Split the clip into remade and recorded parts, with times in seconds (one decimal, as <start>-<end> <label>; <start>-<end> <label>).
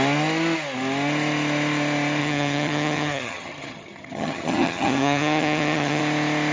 0.0-2.2 recorded; 2.2-6.0 remade; 6.0-6.5 recorded